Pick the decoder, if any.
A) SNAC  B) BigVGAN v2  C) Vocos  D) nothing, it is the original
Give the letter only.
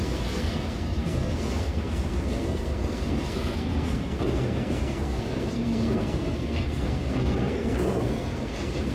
A